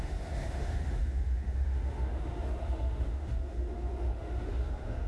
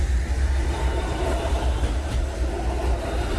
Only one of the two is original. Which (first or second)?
second